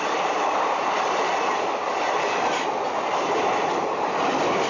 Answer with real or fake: real